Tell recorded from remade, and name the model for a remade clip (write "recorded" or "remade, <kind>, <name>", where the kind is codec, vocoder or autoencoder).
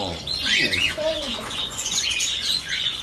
remade, vocoder, Vocos